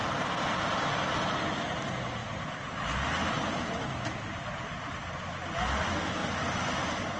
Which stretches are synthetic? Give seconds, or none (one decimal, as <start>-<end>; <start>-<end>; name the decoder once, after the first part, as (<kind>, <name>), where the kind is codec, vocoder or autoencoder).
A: none